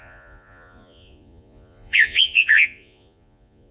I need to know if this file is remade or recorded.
remade